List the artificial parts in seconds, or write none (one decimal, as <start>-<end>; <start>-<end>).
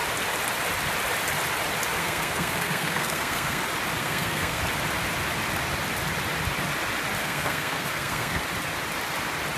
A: 2.0-3.6; 4.0-4.6; 7.2-8.4